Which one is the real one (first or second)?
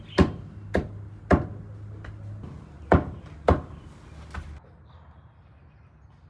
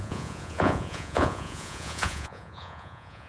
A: first